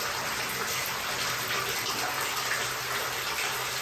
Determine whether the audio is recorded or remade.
recorded